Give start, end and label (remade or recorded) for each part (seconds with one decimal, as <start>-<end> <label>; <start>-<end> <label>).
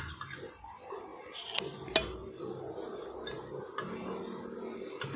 0.0-5.2 recorded